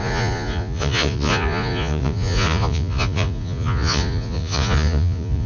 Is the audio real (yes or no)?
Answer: no